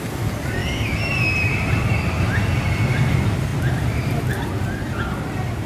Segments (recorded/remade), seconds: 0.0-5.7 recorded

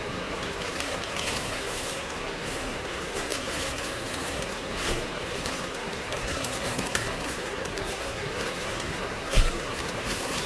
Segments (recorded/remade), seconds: 0.0-10.5 remade

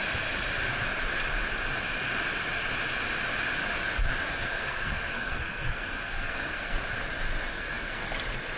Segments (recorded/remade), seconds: 0.0-4.3 recorded; 4.3-6.8 remade; 6.8-7.5 recorded; 7.5-8.1 remade; 8.1-8.6 recorded